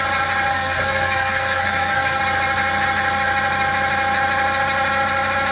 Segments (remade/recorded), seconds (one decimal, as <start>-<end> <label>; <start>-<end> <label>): 0.0-0.5 recorded; 0.5-2.2 remade; 2.2-5.5 recorded